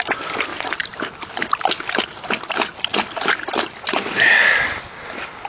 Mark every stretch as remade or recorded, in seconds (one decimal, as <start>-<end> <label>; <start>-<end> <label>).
0.0-5.5 recorded